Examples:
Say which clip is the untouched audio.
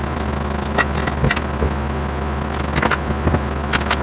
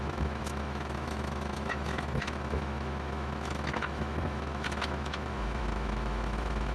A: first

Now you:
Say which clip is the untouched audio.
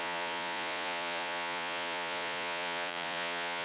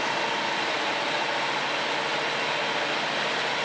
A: second